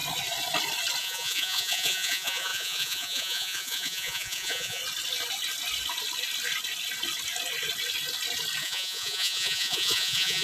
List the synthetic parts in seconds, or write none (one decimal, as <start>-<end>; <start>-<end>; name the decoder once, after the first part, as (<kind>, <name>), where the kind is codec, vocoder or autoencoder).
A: 1.0-4.8 (vocoder, Vocos); 8.6-10.4